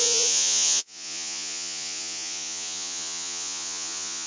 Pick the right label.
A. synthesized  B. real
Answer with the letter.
A